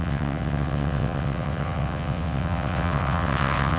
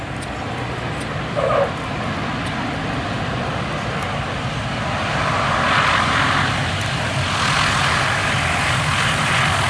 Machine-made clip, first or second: first